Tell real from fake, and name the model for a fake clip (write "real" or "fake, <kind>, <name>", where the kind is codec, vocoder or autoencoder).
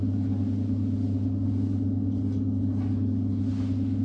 real